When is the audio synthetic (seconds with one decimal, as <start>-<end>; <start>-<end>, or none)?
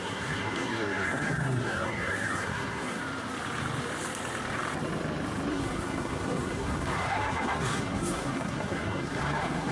0.0-3.0; 5.5-9.7